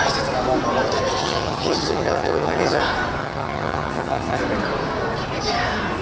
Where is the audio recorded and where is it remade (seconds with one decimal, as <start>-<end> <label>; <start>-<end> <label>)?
0.0-1.2 recorded; 1.2-2.8 remade; 2.8-3.2 recorded; 3.2-4.4 remade; 4.4-6.0 recorded